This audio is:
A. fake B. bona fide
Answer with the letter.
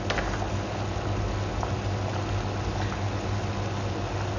B